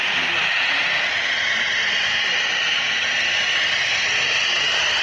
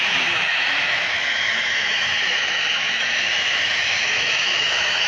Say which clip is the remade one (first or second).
second